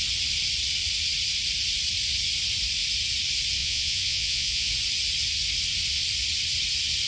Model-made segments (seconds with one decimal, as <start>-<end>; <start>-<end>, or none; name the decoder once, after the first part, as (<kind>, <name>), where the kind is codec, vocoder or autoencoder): 3.6-4.7 (vocoder, Vocos)